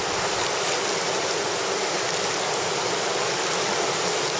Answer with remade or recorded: recorded